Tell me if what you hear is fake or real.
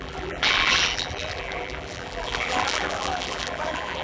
fake